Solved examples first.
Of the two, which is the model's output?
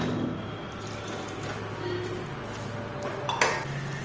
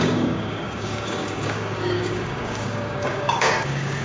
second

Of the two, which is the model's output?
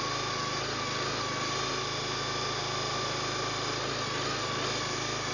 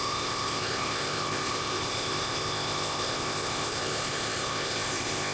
second